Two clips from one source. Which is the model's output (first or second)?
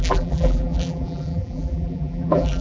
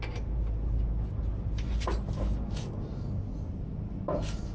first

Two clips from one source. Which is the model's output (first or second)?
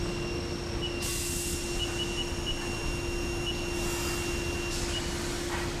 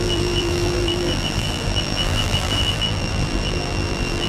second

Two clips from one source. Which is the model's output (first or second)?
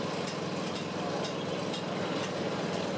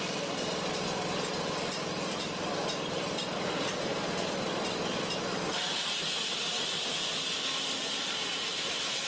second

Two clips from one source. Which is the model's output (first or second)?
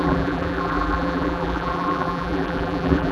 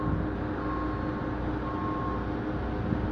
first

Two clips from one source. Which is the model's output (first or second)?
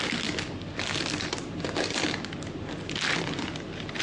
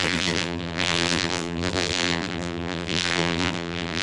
second